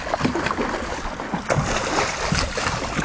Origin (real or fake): real